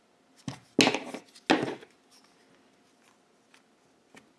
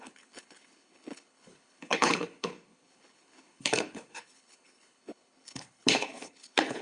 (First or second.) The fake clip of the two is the second